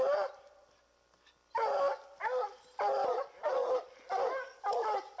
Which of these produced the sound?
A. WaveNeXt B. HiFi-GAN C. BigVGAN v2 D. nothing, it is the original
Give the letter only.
D